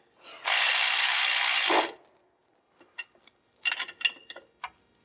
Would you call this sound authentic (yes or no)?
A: yes